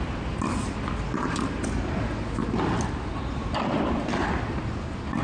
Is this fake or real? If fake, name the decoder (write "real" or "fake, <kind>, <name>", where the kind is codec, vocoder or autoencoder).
real